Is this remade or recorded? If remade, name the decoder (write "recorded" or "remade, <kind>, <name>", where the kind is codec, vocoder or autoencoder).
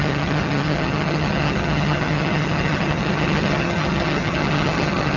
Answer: remade, vocoder, HiFi-GAN